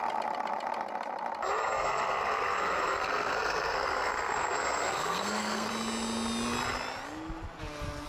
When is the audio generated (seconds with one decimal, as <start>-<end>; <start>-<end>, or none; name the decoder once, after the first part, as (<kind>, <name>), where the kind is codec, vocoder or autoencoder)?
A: 1.6-5.7 (codec, SNAC)